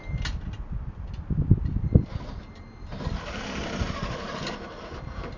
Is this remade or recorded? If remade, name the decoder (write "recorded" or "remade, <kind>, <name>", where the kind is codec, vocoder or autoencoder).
recorded